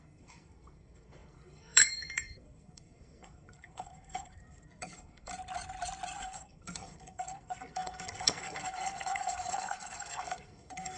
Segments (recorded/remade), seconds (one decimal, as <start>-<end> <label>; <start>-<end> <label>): 0.0-5.3 remade; 5.3-6.2 recorded; 6.2-11.0 remade